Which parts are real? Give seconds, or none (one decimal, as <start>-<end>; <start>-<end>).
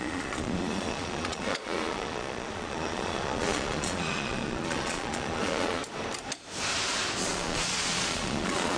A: 5.8-7.2